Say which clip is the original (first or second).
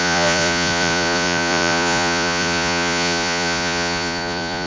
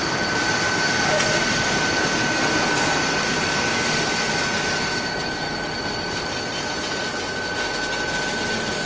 second